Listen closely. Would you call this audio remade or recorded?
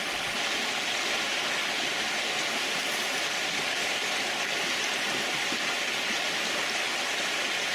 recorded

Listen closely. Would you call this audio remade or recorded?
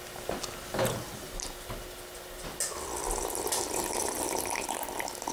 recorded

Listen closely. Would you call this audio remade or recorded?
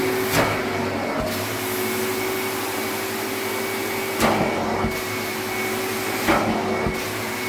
recorded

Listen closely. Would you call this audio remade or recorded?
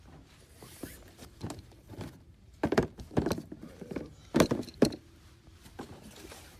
remade